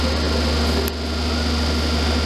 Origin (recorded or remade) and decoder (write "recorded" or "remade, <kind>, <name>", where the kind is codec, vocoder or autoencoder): recorded